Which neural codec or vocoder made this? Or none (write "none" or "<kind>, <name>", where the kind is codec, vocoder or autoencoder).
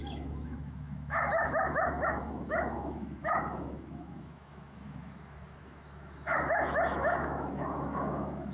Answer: autoencoder, DAC-VAE